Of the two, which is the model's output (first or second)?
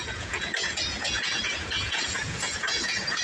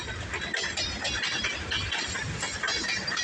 first